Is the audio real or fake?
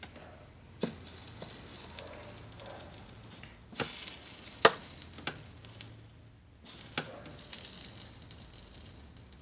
real